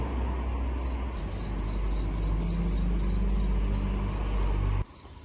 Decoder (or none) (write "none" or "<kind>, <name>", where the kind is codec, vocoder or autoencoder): none